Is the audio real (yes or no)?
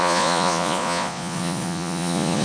no